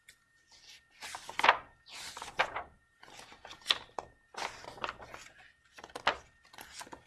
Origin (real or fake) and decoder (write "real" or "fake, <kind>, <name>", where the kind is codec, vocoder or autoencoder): real